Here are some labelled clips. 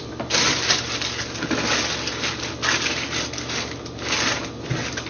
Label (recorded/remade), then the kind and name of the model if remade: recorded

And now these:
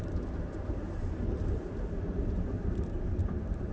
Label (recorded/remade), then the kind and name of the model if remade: recorded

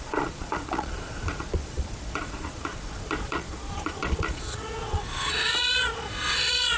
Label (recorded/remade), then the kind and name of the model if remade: remade, vocoder, Vocos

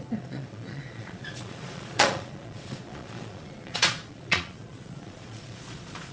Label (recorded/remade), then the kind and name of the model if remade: remade, vocoder, Vocos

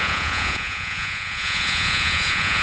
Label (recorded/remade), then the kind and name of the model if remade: remade, vocoder, Vocos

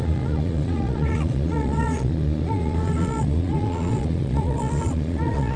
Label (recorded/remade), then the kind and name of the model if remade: remade, vocoder, Vocos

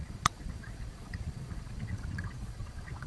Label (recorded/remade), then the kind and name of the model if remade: remade, vocoder, Vocos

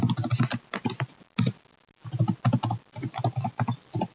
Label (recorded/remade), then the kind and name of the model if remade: recorded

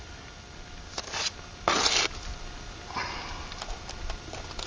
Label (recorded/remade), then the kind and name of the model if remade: recorded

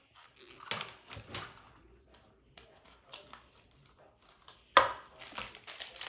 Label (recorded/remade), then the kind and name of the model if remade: recorded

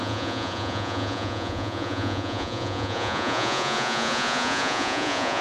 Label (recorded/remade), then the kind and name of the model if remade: remade, vocoder, Vocos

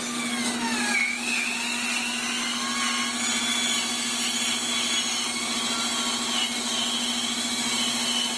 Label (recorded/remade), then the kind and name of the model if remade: recorded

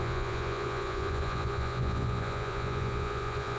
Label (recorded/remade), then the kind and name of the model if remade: remade, vocoder, Vocos